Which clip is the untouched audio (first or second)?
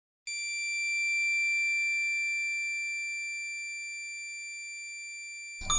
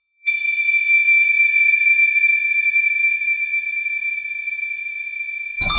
first